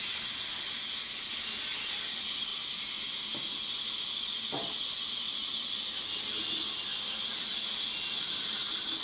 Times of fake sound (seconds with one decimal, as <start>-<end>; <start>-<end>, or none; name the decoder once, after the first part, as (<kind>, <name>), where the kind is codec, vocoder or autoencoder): none

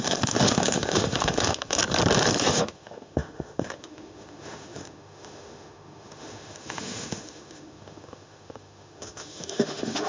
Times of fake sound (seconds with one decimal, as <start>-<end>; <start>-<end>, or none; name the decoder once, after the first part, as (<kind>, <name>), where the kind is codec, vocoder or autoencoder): 0.0-1.8 (autoencoder, DAC-VAE); 2.5-10.1

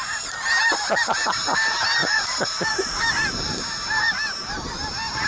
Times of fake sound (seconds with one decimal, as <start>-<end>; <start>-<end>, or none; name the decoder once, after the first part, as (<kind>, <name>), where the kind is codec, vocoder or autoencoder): 0.0-5.3 (vocoder, BigVGAN v2)

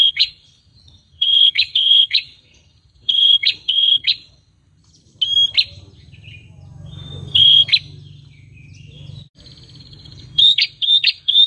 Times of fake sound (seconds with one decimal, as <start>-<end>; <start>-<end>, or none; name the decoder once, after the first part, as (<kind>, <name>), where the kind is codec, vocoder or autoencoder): 0.0-4.8 (codec, HILCodec); 7.3-7.7; 9.8-11.5